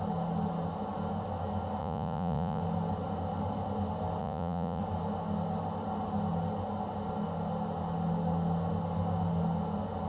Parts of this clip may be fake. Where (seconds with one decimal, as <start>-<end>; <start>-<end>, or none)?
1.8-2.6; 4.2-4.8

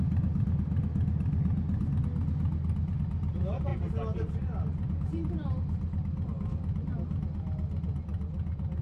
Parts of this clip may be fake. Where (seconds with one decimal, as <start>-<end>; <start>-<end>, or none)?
none

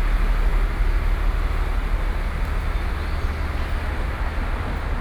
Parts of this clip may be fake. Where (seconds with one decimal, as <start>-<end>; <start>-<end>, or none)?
none

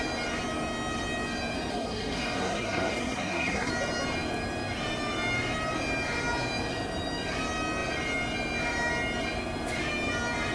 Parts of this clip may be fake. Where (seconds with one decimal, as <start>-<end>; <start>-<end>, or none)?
1.7-3.7

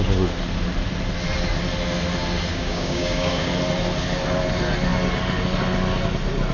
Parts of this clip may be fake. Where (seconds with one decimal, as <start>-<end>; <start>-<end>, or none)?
2.5-3.5

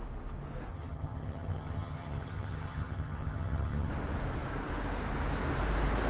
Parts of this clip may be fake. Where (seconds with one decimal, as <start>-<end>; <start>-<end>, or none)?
0.7-3.9

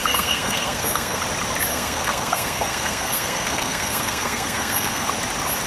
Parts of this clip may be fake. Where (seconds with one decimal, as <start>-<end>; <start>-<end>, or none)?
0.0-1.2; 1.7-5.1

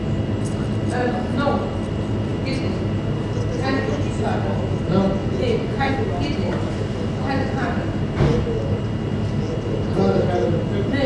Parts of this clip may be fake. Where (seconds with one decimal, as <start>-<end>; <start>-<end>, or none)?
5.2-5.9